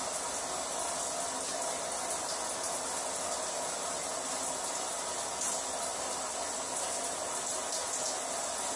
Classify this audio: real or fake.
real